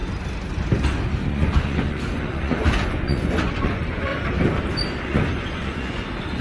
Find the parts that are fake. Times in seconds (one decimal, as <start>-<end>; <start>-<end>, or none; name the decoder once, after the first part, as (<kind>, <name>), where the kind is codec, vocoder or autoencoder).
1.3-4.1 (vocoder, Vocos); 5.0-6.4

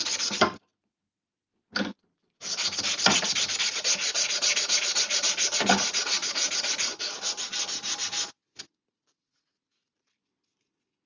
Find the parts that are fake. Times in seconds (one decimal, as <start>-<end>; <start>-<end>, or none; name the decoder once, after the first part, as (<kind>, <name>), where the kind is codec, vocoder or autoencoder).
none

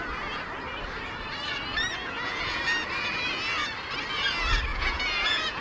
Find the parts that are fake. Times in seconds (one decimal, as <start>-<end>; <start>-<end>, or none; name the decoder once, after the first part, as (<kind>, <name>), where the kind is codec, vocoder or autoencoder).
2.0-2.6 (vocoder, Vocos); 4.7-5.6

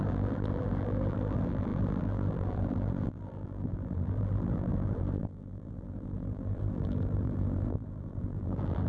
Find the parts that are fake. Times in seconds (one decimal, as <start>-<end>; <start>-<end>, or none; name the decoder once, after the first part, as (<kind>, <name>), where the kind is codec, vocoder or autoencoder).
0.0-8.9 (vocoder, BigVGAN v2)

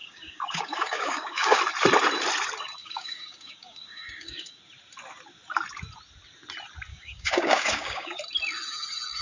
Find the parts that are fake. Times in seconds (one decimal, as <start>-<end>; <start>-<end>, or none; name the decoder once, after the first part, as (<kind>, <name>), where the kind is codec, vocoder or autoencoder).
0.0-1.6 (codec, DAC); 2.8-4.6; 6.9-8.2

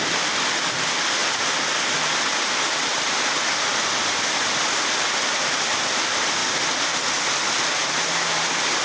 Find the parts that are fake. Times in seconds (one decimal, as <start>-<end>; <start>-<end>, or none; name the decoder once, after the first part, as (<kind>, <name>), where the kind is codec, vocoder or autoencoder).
0.0-1.2 (vocoder, BigVGAN v2); 1.7-6.4; 7.2-7.8; 8.3-8.8

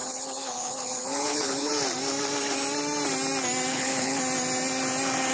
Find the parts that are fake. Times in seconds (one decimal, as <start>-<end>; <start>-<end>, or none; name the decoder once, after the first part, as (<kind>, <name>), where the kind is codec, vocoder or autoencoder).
0.0-1.7 (codec, HILCodec); 3.7-4.2